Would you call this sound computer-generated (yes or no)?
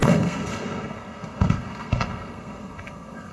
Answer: yes